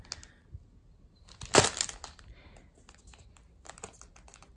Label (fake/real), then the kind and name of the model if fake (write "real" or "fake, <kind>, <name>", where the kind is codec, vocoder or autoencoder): real